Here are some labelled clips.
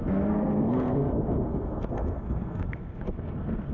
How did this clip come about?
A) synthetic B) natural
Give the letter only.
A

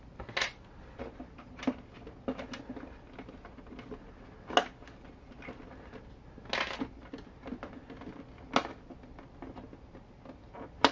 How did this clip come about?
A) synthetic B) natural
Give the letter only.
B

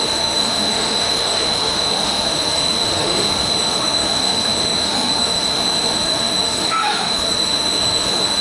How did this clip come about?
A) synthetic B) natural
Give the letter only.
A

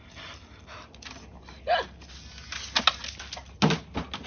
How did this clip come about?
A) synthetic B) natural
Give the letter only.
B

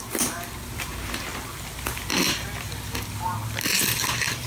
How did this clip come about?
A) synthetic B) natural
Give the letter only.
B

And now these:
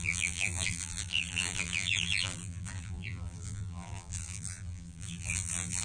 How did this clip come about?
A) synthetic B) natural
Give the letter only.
A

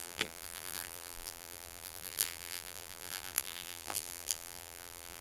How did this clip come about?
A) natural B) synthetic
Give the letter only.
B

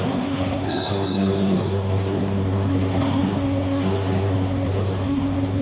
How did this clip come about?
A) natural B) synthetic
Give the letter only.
B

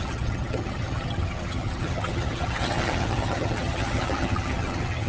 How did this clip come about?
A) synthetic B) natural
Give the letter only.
A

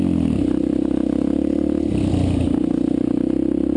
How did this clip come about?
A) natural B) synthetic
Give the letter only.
A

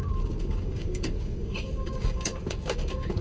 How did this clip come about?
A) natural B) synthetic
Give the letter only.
B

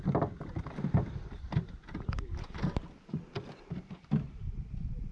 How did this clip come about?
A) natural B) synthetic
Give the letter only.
A